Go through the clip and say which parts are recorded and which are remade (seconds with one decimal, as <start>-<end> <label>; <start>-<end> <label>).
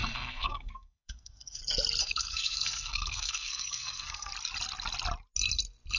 0.0-1.6 remade; 1.6-2.0 recorded; 2.0-4.3 remade; 4.3-6.0 recorded